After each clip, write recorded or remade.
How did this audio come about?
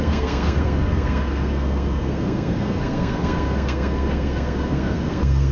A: remade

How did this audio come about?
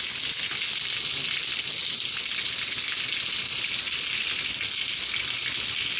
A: recorded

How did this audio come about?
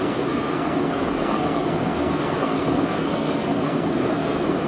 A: remade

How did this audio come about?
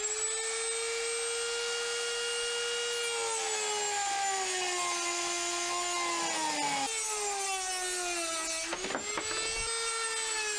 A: recorded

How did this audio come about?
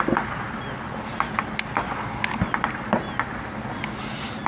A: recorded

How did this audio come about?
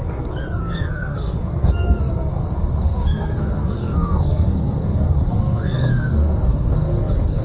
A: remade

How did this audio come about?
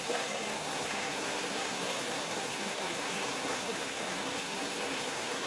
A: remade